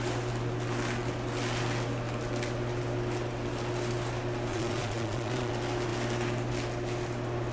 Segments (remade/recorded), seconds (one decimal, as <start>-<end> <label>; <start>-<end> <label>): 0.0-4.5 recorded; 4.5-5.5 remade; 5.5-7.5 recorded